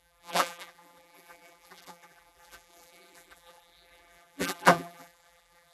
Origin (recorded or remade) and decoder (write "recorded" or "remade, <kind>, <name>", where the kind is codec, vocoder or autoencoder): remade, vocoder, BigVGAN v2